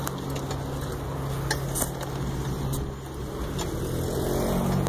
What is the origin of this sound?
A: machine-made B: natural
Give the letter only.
B